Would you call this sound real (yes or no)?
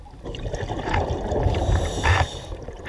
no